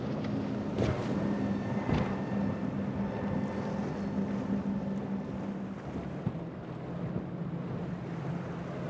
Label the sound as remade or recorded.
recorded